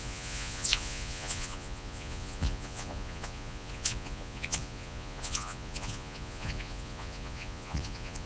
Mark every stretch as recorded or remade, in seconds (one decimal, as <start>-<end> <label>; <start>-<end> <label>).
0.0-8.3 remade